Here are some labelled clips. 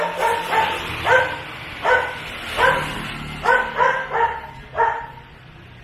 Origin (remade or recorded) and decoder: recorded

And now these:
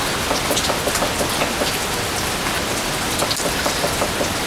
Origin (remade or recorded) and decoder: recorded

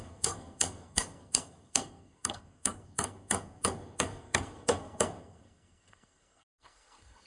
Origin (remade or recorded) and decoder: remade, codec, SNAC